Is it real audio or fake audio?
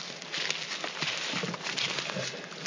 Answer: real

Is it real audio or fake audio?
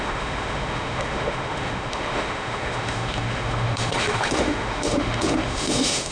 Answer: fake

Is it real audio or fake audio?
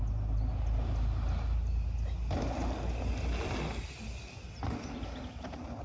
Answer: real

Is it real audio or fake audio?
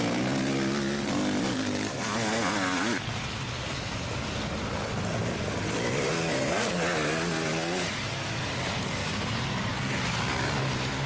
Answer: real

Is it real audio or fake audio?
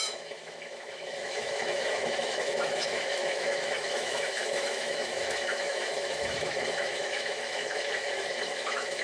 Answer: fake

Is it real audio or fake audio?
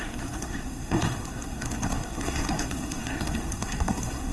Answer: fake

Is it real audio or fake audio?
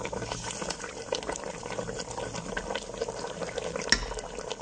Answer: real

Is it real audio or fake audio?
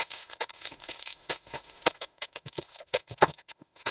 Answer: fake